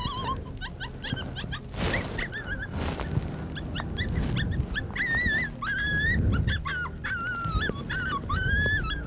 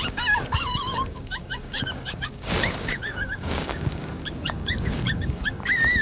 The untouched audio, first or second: first